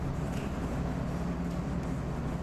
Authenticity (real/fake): real